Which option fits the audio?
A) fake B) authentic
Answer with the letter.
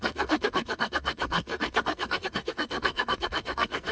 A